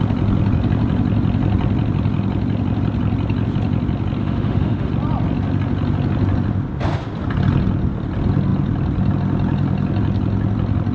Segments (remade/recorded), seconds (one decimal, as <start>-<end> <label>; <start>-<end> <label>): 0.0-4.2 recorded; 4.2-4.9 remade; 4.9-10.9 recorded